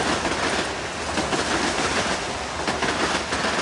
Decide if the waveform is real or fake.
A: real